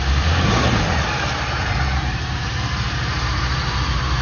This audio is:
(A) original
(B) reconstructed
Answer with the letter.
B